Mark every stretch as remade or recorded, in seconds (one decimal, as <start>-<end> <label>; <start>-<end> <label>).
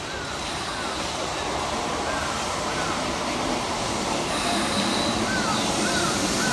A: 0.0-0.7 remade; 0.7-2.2 recorded; 2.2-6.5 remade